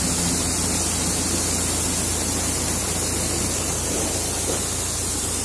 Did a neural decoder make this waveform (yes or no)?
no